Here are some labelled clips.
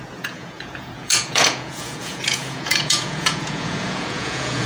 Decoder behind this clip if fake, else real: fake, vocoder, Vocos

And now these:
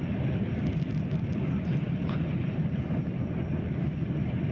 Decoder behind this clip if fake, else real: real